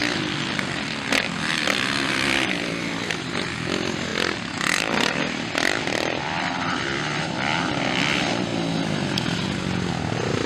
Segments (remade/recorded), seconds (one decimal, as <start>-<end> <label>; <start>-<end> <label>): 0.0-8.5 remade; 8.5-9.9 recorded; 9.9-10.5 remade